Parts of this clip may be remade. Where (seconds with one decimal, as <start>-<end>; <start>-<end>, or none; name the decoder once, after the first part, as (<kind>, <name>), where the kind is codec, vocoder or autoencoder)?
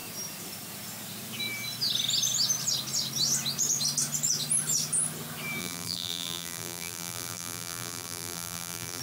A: 5.6-9.0 (vocoder, BigVGAN v2)